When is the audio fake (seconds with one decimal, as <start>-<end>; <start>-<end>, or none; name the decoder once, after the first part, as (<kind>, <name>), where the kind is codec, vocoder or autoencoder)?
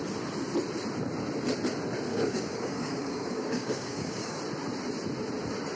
2.1-4.4 (codec, DAC)